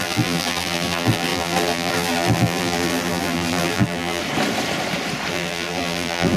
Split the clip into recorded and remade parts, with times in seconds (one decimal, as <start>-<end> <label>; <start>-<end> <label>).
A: 0.0-4.2 remade; 4.2-5.3 recorded; 5.3-6.4 remade